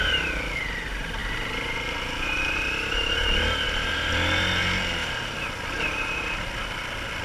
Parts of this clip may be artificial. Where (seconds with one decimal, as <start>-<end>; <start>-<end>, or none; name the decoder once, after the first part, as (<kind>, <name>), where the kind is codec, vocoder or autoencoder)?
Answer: 5.0-7.2 (vocoder, BigVGAN v2)